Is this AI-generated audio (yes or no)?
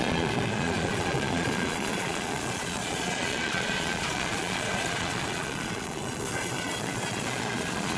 yes